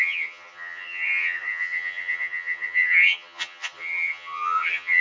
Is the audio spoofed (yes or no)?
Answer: yes